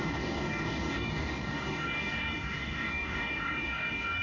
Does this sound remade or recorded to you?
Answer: remade